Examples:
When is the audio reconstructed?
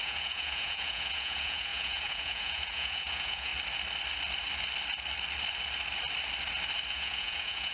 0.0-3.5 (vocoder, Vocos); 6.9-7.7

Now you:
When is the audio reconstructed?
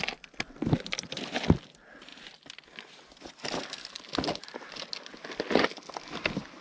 none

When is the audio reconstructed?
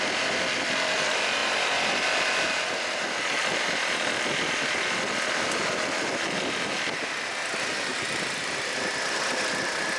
none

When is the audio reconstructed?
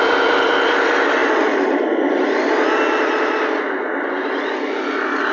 none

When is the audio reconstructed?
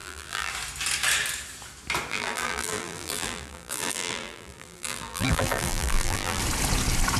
0.0-0.5 (vocoder, BigVGAN v2); 2.1-6.4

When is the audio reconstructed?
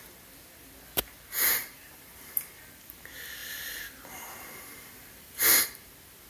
1.6-2.4 (vocoder, BigVGAN v2); 3.4-5.6